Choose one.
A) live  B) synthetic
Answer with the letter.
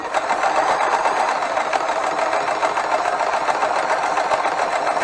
A